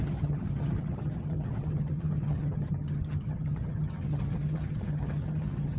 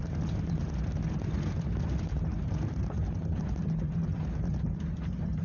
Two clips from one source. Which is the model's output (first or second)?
first